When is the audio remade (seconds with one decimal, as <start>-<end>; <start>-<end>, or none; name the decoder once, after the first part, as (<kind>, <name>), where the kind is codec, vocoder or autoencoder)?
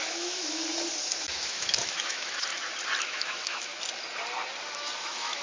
0.0-0.6 (autoencoder, DAC-VAE); 1.2-2.5; 3.0-3.7; 5.0-5.4